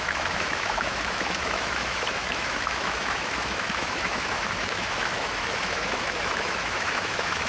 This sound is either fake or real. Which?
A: fake